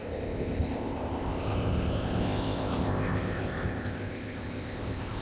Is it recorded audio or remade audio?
remade